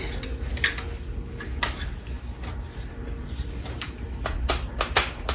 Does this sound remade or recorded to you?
recorded